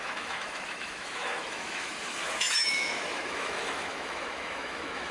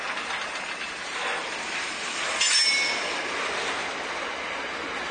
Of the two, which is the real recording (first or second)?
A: second